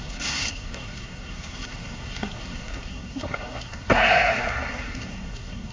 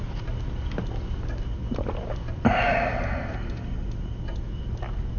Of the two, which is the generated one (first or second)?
first